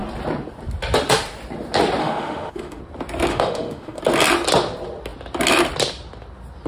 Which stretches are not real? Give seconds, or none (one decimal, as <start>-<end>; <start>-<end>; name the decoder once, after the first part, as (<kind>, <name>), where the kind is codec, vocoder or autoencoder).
2.0-2.8 (autoencoder, DAC-VAE); 3.3-4.0